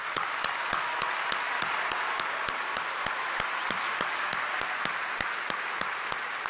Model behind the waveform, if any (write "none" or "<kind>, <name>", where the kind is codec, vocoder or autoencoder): none